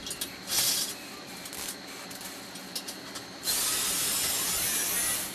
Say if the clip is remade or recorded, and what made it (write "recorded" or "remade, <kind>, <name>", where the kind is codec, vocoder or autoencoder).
recorded